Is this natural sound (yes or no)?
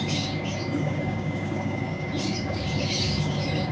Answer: no